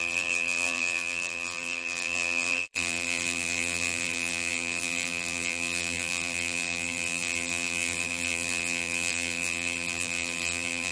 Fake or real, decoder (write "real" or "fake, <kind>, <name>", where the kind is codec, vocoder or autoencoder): fake, vocoder, BigVGAN v2